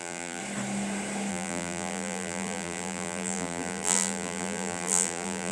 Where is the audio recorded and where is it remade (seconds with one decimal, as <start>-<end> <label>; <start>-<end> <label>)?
0.0-0.4 remade; 0.4-1.3 recorded; 1.3-5.5 remade